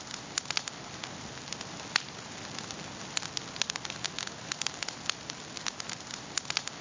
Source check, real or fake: real